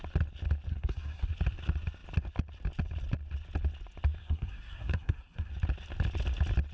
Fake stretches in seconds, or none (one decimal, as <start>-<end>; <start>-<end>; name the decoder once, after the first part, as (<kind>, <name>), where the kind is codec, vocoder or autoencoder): 0.7-1.3 (codec, SNAC); 4.2-5.5